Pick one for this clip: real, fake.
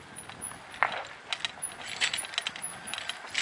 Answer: real